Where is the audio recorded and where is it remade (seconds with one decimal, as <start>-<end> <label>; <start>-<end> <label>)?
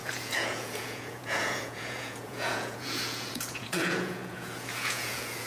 0.0-5.5 remade